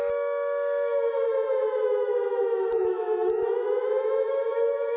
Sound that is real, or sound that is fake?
fake